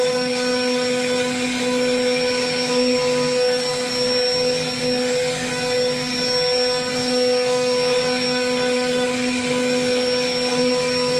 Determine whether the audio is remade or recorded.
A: remade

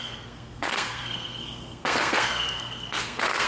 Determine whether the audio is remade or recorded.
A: remade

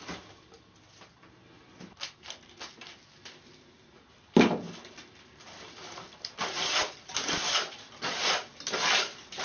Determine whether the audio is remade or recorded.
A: recorded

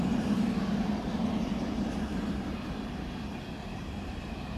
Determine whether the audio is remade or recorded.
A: recorded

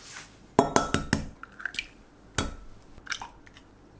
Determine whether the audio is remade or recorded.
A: recorded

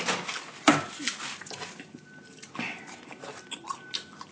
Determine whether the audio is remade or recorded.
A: recorded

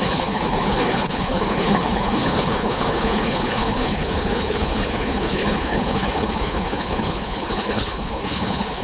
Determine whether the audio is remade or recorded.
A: remade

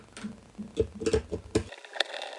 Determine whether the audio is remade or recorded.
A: recorded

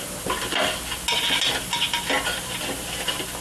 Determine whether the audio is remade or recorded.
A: recorded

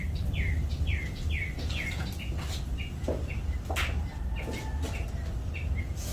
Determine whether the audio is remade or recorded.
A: recorded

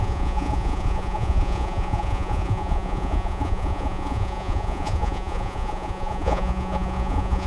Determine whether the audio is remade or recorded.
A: remade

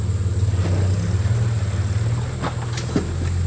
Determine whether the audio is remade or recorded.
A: recorded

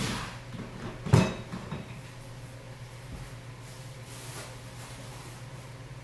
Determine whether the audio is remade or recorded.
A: recorded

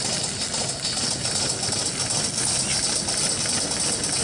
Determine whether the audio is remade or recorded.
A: recorded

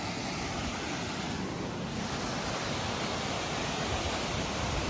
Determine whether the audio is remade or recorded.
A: recorded